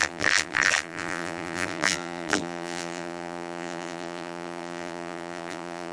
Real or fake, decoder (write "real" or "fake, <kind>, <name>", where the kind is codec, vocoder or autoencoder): fake, vocoder, BigVGAN v2